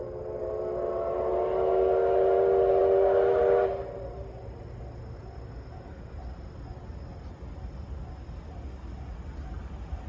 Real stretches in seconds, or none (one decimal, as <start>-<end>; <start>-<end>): 0.0-10.1